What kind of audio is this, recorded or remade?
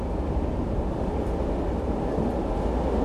recorded